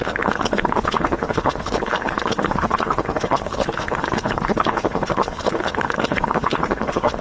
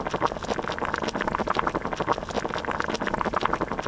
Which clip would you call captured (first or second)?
second